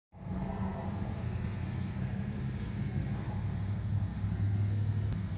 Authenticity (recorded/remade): remade